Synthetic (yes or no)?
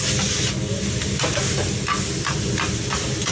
no